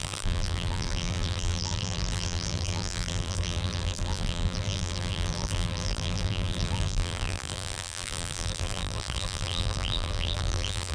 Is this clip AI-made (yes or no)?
yes